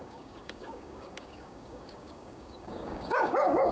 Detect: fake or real fake